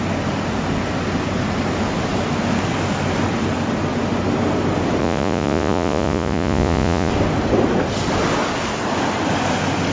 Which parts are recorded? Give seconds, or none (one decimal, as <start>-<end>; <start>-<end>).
0.0-5.0; 7.1-9.9